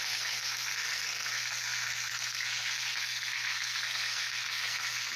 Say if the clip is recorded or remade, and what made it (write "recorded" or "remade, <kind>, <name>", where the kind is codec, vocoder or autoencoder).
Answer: remade, codec, SNAC